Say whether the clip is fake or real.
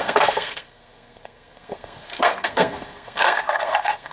fake